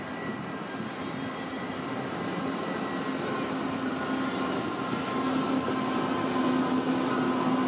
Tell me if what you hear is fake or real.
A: real